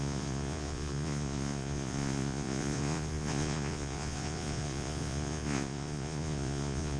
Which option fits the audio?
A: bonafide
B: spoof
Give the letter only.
B